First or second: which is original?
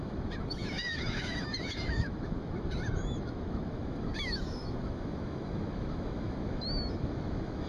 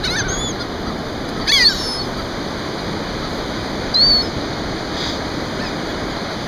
second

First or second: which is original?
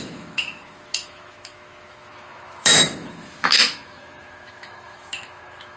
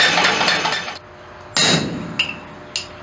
second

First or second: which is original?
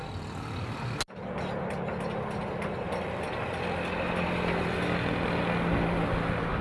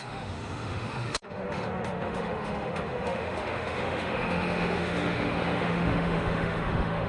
first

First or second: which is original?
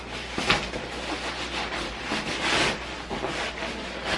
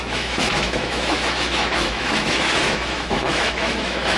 first